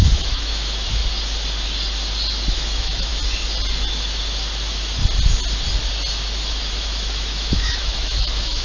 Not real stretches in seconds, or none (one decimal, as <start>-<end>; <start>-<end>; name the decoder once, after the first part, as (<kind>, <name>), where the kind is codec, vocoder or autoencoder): 0.0-1.0 (autoencoder, DAC-VAE); 2.5-3.1; 6.7-8.6